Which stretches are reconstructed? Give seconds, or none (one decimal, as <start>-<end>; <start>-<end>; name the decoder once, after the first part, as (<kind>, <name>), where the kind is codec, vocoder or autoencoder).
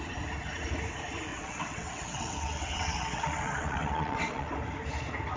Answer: 1.3-4.5 (vocoder, WaveNeXt)